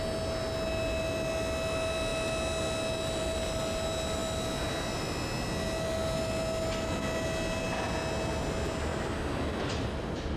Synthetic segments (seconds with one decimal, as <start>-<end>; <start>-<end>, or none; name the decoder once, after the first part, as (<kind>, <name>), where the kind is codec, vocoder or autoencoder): none